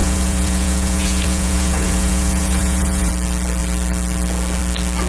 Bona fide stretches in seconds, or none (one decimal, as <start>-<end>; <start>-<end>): 3.1-5.1